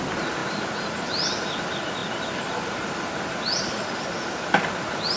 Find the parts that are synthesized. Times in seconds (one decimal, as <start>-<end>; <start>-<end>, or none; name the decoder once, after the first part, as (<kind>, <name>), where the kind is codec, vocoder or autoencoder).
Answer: none